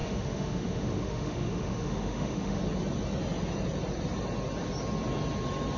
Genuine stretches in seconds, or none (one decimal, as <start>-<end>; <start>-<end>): 2.6-5.8